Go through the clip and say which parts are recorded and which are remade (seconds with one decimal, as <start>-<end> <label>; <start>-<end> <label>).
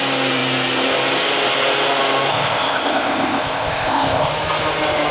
0.0-2.3 recorded; 2.3-4.3 remade; 4.3-5.1 recorded